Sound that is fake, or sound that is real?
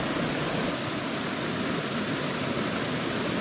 real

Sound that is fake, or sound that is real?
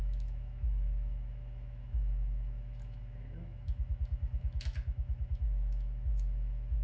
fake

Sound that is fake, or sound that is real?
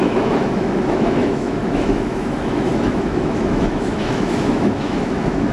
fake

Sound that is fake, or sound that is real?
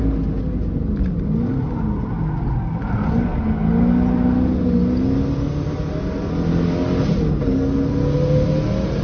real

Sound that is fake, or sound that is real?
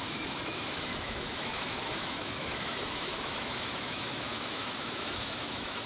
fake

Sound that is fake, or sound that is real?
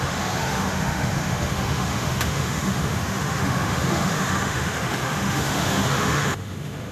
fake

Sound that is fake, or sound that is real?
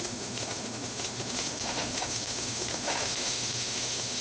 fake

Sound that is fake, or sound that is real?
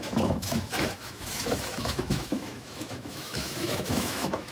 fake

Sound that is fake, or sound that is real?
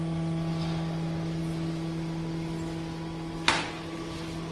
real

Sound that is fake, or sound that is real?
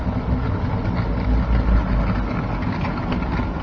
real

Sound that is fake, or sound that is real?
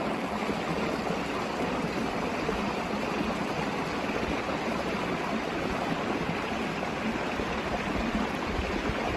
real